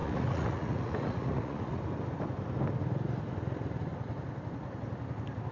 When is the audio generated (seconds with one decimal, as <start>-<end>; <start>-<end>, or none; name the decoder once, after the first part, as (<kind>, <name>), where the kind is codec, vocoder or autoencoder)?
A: 0.0-1.8 (vocoder, Vocos)